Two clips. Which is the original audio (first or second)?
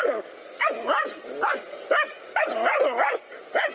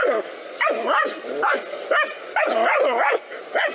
second